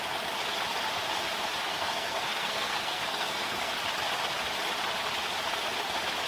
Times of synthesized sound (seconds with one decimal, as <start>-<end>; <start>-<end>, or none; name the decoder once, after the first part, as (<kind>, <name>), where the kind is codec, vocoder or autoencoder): 1.7-3.7 (codec, SNAC)